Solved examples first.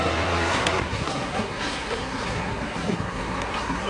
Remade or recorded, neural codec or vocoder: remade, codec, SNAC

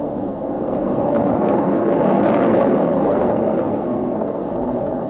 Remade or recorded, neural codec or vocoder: remade, codec, SNAC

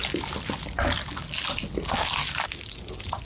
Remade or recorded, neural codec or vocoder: recorded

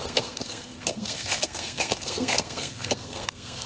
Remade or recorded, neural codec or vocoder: remade, codec, SNAC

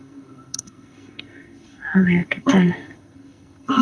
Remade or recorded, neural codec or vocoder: remade, codec, SNAC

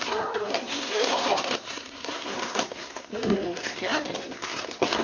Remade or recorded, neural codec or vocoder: remade, codec, SNAC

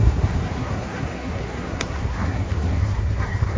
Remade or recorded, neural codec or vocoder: remade, codec, SNAC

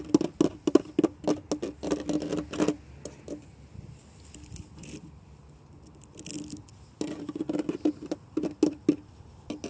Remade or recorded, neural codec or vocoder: recorded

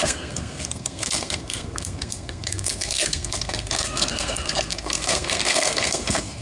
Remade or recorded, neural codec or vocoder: remade, codec, SNAC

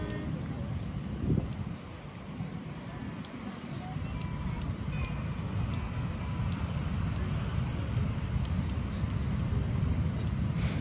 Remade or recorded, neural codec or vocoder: recorded